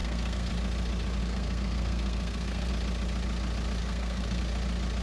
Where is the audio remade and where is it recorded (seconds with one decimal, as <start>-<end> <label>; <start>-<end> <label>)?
0.0-0.5 remade; 0.5-1.2 recorded; 1.2-2.7 remade; 2.7-3.8 recorded; 3.8-4.4 remade; 4.4-5.0 recorded